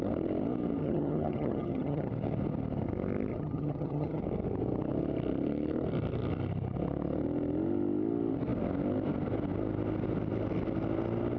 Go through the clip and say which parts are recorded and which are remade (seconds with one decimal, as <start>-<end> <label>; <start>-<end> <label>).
0.0-0.8 recorded; 0.8-2.1 remade; 2.1-3.3 recorded; 3.3-4.2 remade; 4.2-11.4 recorded